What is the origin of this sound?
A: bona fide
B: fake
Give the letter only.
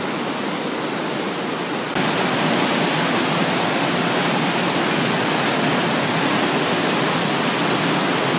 A